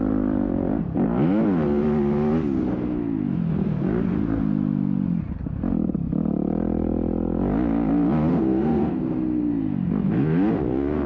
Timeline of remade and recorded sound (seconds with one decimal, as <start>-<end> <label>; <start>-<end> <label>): 0.0-8.3 recorded; 8.3-9.0 remade; 9.0-11.1 recorded

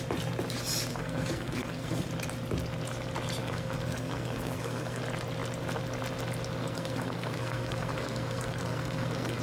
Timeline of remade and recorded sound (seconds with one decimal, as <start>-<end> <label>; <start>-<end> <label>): 0.0-0.9 recorded; 0.9-2.1 remade; 2.1-3.4 recorded; 3.4-5.0 remade; 5.0-6.6 recorded; 6.6-9.4 remade

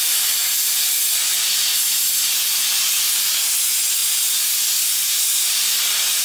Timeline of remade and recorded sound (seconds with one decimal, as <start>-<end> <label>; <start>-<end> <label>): 0.0-6.2 recorded

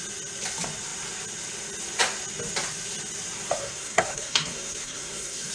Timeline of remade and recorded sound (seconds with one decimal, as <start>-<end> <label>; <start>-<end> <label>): 0.0-3.6 recorded; 3.6-5.5 remade

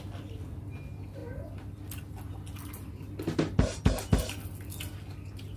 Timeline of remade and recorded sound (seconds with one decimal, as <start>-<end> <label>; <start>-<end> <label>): 0.0-5.6 recorded

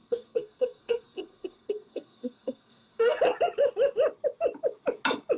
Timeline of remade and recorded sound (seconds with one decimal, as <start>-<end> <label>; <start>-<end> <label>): 0.0-3.2 remade; 3.2-5.4 recorded

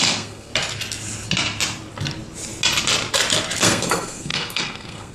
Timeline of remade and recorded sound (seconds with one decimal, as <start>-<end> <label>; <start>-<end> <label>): 0.0-0.5 remade; 0.5-3.6 recorded; 3.6-5.1 remade